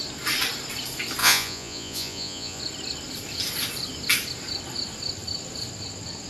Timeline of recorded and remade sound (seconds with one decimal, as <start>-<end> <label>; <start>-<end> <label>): 0.0-1.2 recorded; 1.2-2.6 remade; 2.6-6.3 recorded